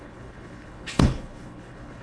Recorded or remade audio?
remade